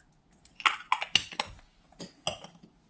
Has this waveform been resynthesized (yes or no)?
no